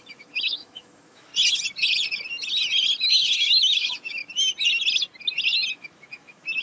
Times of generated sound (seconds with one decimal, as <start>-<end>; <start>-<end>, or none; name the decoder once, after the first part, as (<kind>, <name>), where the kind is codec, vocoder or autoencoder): 0.0-1.3 (autoencoder, DAC-VAE); 3.1-4.2; 5.7-6.6

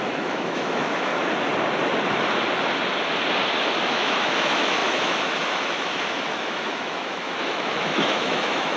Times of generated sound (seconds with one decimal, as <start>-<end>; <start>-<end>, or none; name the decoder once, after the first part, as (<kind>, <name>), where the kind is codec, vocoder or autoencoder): 0.0-1.1 (autoencoder, DAC-VAE); 3.9-8.8

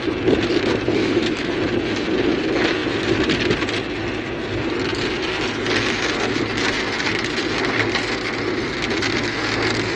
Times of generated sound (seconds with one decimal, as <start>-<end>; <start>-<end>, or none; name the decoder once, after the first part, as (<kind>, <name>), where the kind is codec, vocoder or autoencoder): 1.0-1.5 (autoencoder, DAC-VAE)

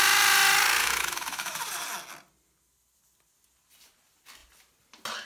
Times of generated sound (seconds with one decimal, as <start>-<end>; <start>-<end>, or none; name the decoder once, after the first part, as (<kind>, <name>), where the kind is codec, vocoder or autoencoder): 0.8-1.6 (autoencoder, DAC-VAE)

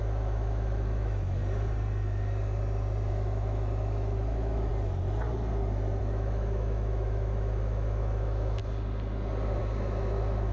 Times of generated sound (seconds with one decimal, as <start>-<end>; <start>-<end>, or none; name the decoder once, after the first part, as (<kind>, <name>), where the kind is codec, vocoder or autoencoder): 0.0-1.4 (autoencoder, DAC-VAE); 3.1-4.7; 6.0-8.6; 9.6-10.5

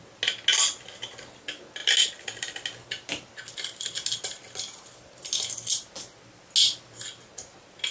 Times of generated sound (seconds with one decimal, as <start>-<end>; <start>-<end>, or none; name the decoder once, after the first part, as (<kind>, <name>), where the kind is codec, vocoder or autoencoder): none

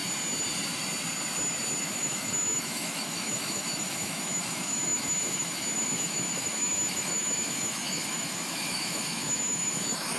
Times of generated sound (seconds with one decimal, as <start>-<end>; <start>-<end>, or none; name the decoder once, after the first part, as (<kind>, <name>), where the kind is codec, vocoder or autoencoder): 1.8-10.2 (autoencoder, DAC-VAE)